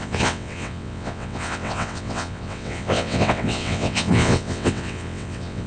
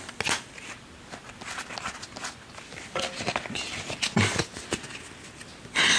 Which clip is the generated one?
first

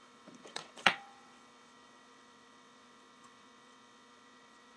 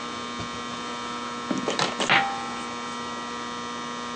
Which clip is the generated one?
first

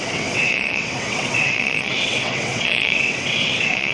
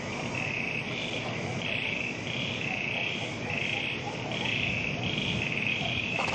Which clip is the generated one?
first